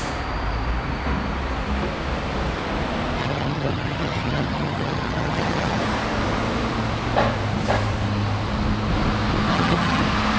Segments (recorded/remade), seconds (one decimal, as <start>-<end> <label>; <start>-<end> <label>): 0.0-3.2 recorded; 3.2-5.8 remade; 5.8-9.5 recorded; 9.5-10.0 remade; 10.0-10.4 recorded